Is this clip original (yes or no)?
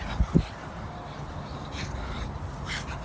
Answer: yes